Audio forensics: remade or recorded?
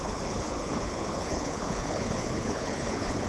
remade